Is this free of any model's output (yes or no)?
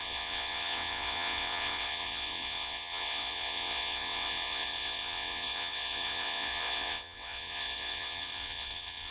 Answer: no